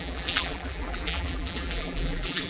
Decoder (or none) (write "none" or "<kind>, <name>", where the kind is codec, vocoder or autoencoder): vocoder, BigVGAN v2